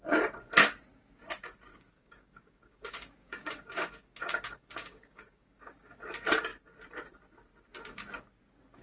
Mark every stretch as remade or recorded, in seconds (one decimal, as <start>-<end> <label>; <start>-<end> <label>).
0.0-1.7 recorded; 1.7-5.9 remade; 5.9-8.8 recorded